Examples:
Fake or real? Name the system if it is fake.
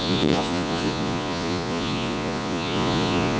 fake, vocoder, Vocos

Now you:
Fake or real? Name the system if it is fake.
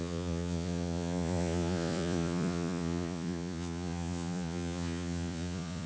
fake, vocoder, Vocos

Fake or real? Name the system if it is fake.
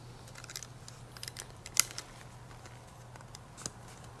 real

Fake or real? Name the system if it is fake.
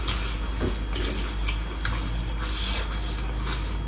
real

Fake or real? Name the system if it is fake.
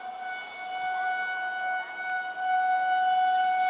real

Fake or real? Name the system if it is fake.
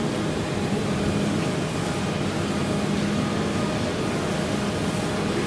real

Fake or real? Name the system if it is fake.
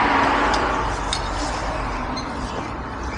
real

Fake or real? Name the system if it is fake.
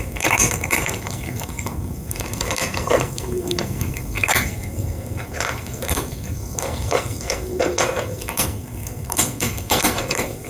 fake, codec, SNAC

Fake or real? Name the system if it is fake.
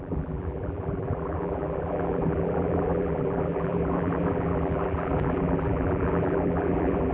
fake, vocoder, BigVGAN v2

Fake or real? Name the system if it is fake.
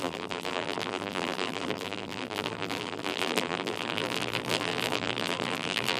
fake, vocoder, BigVGAN v2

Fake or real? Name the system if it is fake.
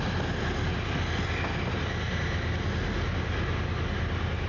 real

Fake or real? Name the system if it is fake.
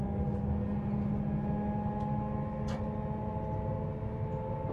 real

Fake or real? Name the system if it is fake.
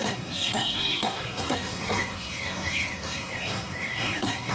fake, codec, SNAC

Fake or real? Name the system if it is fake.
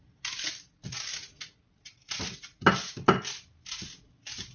real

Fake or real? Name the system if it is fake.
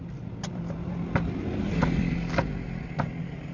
real